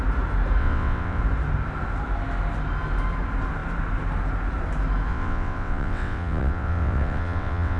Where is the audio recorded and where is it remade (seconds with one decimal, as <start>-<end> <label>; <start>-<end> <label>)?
0.0-0.6 recorded; 0.6-1.2 remade; 1.2-5.1 recorded; 5.1-7.8 remade